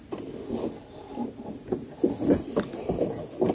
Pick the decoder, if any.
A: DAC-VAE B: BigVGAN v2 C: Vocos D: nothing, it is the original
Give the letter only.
D